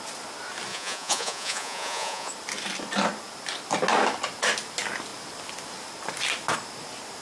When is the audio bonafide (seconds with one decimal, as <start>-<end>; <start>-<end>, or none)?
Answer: 0.0-0.7; 2.3-7.2